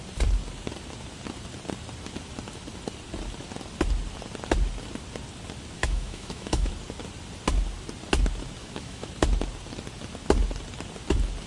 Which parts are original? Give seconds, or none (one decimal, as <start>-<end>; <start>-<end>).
0.0-5.8; 6.7-8.6; 9.1-11.5